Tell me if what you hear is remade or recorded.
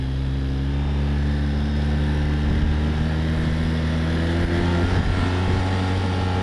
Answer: recorded